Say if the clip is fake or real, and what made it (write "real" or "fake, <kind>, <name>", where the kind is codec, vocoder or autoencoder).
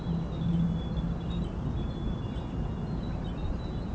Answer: real